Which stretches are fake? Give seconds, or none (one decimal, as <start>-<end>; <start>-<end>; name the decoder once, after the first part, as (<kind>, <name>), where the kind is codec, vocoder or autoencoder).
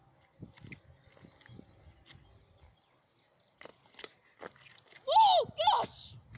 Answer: 3.7-5.8 (vocoder, BigVGAN v2)